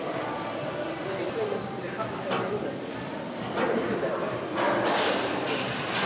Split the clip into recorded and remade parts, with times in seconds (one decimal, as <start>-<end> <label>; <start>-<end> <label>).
0.0-6.1 recorded